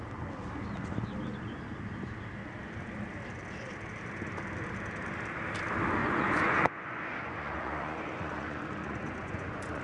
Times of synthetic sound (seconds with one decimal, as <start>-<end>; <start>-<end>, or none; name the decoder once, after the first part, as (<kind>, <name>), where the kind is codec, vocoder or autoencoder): 6.0-9.8 (vocoder, Vocos)